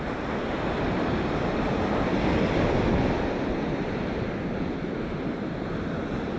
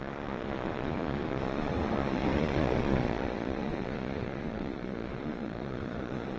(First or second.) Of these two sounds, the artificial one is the second